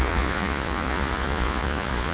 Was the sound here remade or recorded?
remade